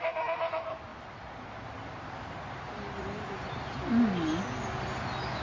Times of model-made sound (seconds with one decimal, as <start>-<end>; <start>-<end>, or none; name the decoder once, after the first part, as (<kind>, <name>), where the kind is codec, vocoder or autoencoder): none